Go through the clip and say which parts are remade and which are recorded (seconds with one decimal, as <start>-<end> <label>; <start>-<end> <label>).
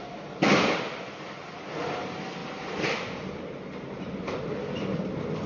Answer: 0.0-5.5 recorded